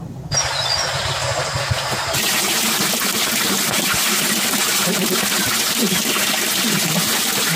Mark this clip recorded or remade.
recorded